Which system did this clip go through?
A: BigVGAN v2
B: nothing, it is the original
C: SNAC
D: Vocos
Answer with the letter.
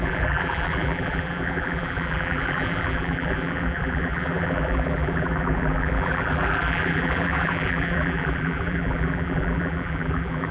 A